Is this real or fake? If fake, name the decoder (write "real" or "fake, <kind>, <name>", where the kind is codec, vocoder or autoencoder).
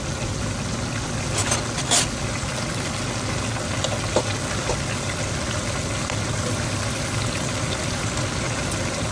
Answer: real